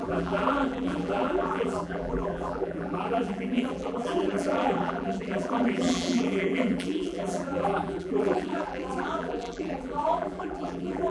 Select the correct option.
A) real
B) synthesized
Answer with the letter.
B